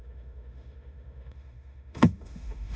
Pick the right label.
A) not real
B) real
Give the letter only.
A